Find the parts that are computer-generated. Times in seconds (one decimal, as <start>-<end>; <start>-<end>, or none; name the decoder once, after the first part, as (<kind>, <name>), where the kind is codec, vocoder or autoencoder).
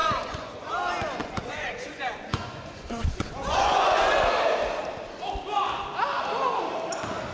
0.0-0.7 (vocoder, Vocos); 1.2-4.1